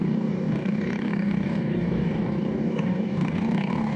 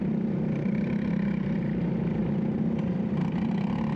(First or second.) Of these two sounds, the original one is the second